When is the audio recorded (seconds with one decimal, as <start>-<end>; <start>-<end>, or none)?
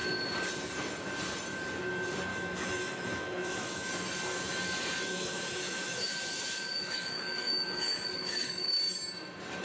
0.0-2.3; 3.9-5.1; 8.8-9.6